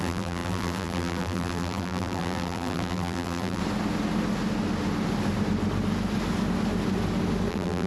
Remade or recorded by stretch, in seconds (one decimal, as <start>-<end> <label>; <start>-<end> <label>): 0.0-3.6 remade; 3.6-7.5 recorded; 7.5-7.9 remade